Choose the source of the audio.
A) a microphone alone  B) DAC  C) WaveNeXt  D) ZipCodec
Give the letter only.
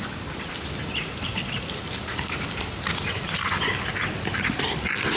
A